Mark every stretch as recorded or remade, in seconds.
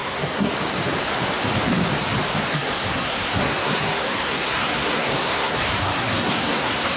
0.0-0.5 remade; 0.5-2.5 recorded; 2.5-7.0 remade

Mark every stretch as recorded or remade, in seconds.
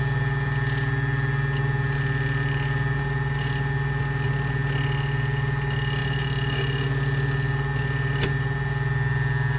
0.0-9.6 recorded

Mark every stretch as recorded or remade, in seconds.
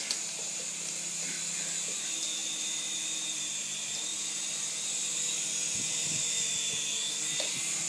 0.0-7.9 recorded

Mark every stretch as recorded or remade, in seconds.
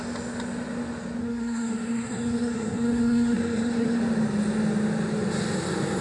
0.0-1.2 recorded; 1.2-4.0 remade; 4.0-6.0 recorded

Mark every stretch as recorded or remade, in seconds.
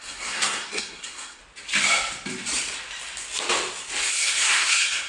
0.0-1.4 remade; 1.4-4.1 recorded; 4.1-5.1 remade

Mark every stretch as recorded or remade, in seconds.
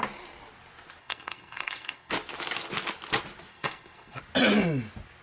0.0-1.0 recorded; 1.0-2.1 remade; 2.1-3.5 recorded; 3.5-4.2 remade; 4.2-5.2 recorded